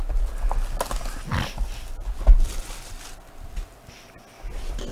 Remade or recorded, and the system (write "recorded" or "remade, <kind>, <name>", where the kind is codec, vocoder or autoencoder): recorded